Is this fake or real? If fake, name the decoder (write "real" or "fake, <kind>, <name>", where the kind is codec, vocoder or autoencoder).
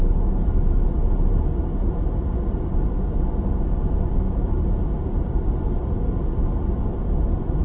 real